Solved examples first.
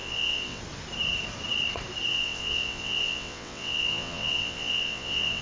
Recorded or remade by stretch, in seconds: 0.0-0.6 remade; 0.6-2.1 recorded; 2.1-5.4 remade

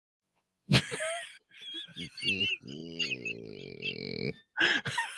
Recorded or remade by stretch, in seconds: 0.0-0.8 remade; 0.8-5.2 recorded

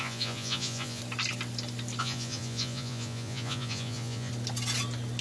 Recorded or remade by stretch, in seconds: 0.0-1.0 remade; 1.0-2.0 recorded; 2.0-4.3 remade; 4.3-5.2 recorded

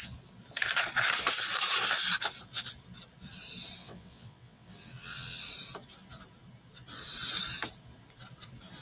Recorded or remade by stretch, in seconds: 0.0-3.8 recorded; 3.8-5.5 remade; 5.5-8.8 recorded

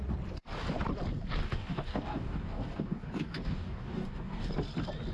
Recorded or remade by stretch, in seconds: 0.0-1.4 recorded; 1.4-4.5 remade; 4.5-5.1 recorded

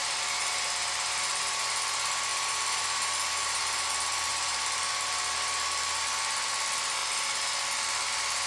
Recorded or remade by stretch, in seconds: 0.0-1.6 remade; 1.6-2.3 recorded; 2.3-3.9 remade; 3.9-4.3 recorded; 4.3-4.8 remade; 4.8-8.5 recorded

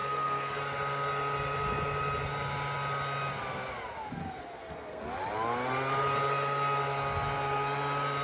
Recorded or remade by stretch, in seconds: 0.0-0.6 remade; 0.6-4.2 recorded; 4.2-5.0 remade; 5.0-8.2 recorded

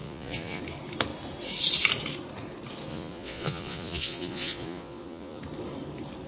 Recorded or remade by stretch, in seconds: 0.0-0.6 remade; 0.6-2.9 recorded; 2.9-5.4 remade; 5.4-6.3 recorded